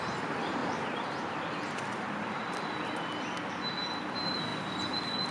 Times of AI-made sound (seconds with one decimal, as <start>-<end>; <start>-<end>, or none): 0.0-0.6; 3.8-4.5